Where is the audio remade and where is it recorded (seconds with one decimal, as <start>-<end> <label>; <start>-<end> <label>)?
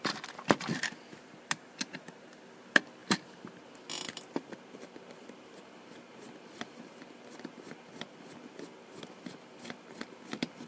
0.0-10.7 recorded